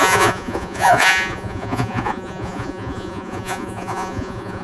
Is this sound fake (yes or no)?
yes